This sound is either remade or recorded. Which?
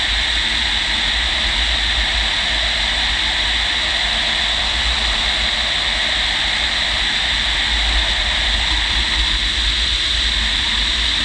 recorded